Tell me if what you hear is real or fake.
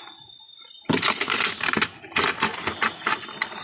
real